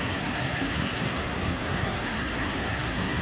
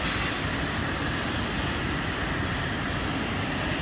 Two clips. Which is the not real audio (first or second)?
first